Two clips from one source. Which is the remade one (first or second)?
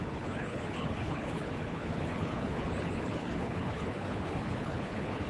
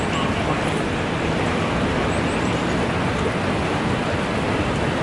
first